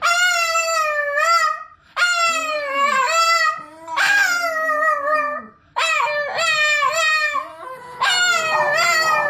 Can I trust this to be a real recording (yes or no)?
yes